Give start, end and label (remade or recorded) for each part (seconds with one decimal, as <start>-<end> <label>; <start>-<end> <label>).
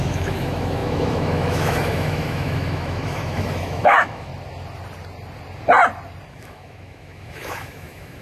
0.0-4.3 remade; 4.3-6.3 recorded; 6.3-8.2 remade